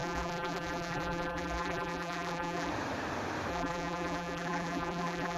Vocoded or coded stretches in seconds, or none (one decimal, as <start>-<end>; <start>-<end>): 0.0-2.7; 3.5-5.4